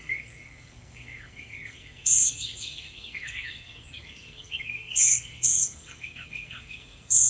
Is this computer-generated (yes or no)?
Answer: yes